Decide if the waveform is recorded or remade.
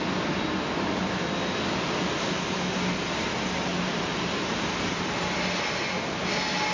recorded